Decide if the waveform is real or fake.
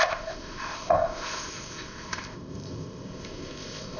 fake